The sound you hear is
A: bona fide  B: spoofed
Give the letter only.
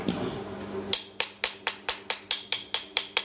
A